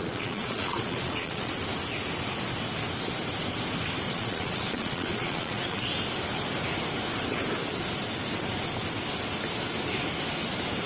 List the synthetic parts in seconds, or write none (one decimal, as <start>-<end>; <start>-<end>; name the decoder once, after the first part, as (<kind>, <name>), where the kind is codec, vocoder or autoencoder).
0.0-1.6 (vocoder, Vocos); 4.1-5.9